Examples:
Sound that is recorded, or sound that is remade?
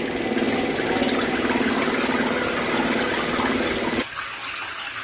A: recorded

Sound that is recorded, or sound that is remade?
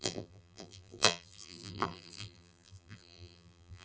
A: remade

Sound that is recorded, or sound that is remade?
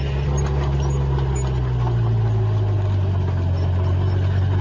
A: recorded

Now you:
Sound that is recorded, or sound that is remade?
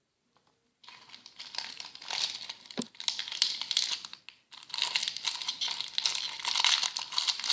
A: recorded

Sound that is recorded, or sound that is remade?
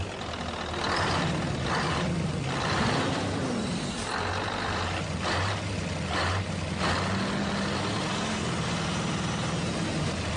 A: recorded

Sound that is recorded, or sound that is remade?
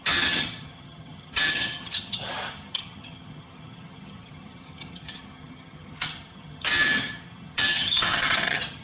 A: remade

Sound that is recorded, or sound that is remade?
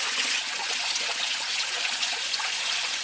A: remade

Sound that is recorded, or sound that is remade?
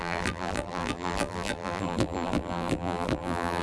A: remade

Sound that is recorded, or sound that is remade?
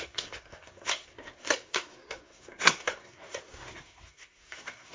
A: remade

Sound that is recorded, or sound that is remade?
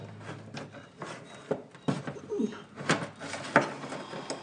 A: recorded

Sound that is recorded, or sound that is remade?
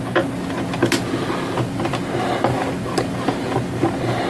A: recorded